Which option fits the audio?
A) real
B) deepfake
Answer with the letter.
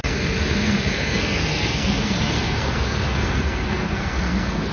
B